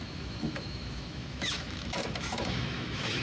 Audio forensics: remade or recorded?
remade